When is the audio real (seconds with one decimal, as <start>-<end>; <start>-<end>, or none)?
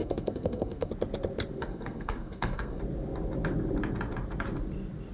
0.9-1.6; 2.8-5.1